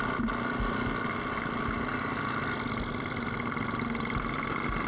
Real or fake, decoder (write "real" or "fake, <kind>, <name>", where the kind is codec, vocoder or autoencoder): real